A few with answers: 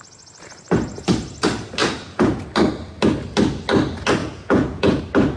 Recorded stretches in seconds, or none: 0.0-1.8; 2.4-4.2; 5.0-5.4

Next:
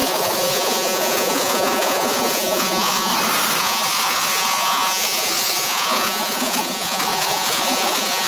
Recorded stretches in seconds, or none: 3.1-3.6

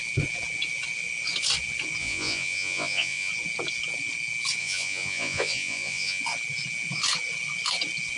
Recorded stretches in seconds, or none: 0.0-2.0; 3.3-4.6; 6.2-8.2

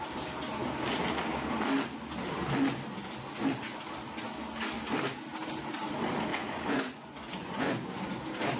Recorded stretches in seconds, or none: 0.0-6.3; 8.0-8.6

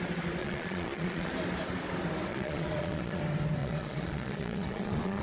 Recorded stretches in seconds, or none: 0.0-0.4; 1.3-2.3; 3.2-3.6

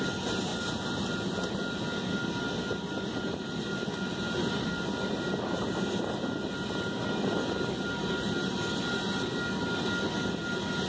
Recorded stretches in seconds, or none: 0.0-10.9

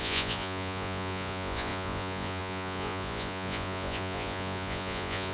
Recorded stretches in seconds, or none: none